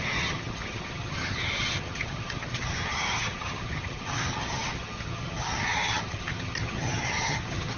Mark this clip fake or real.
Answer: fake